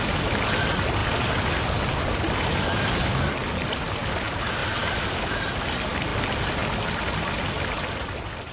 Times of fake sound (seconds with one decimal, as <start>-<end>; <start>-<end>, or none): 4.6-5.3